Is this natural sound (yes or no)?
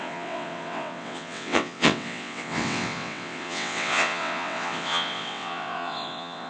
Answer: no